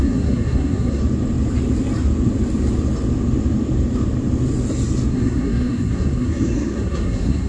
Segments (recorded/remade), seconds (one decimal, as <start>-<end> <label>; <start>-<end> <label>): 0.0-1.0 remade; 1.0-5.1 recorded; 5.1-7.5 remade